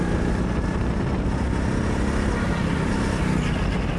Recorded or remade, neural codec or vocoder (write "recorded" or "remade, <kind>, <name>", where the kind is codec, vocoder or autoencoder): recorded